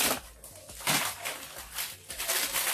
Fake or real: real